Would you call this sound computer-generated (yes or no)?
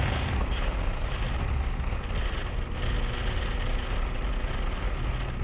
no